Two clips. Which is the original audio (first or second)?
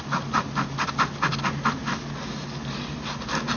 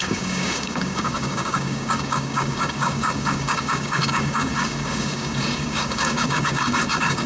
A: first